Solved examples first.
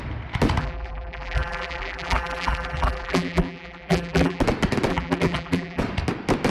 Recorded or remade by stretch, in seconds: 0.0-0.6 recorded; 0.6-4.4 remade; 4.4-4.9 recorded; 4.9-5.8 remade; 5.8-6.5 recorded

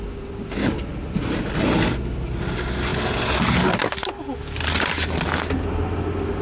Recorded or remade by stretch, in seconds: 0.0-0.9 recorded; 0.9-1.4 remade; 1.4-6.4 recorded

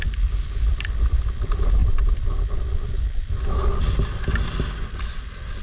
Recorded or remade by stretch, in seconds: 0.0-5.6 recorded

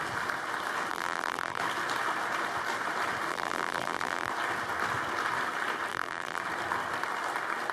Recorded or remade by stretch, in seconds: 0.0-0.9 recorded; 0.9-1.6 remade; 1.6-3.3 recorded; 3.3-4.3 remade; 4.3-5.9 recorded; 5.9-6.4 remade; 6.4-7.7 recorded

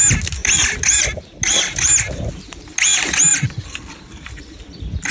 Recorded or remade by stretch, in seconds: 0.0-3.3 recorded; 3.3-4.4 remade; 4.4-5.1 recorded

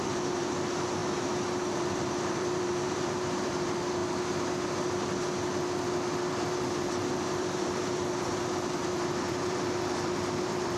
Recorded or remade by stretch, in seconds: 0.0-1.0 remade; 1.0-1.7 recorded; 1.7-4.0 remade; 4.0-6.3 recorded; 6.3-10.8 remade

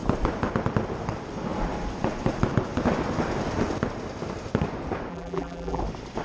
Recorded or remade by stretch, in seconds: 0.0-5.1 recorded; 5.1-5.8 remade; 5.8-6.2 recorded

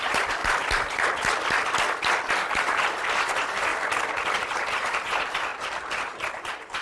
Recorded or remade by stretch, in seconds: 0.0-0.4 remade; 0.4-2.3 recorded; 2.3-3.7 remade; 3.7-4.3 recorded; 4.3-6.8 remade